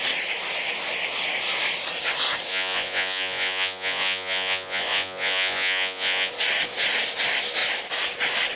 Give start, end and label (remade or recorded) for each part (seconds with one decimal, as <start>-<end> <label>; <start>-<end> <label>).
0.0-2.5 recorded; 2.5-6.3 remade; 6.3-8.6 recorded